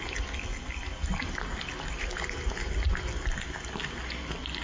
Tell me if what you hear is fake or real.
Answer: real